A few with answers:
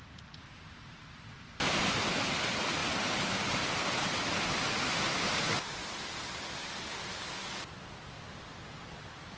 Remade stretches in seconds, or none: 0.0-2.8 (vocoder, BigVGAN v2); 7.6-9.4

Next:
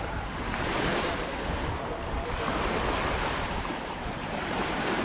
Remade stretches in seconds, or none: 0.0-1.3 (vocoder, BigVGAN v2); 3.3-5.0

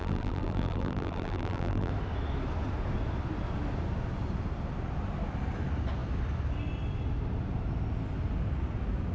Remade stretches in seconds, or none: 0.0-1.9 (vocoder, BigVGAN v2)

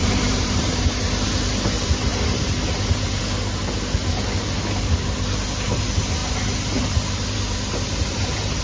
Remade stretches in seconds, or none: 0.0-0.8 (vocoder, BigVGAN v2)

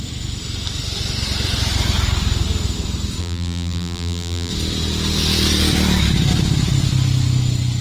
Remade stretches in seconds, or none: 3.2-4.5 (vocoder, BigVGAN v2)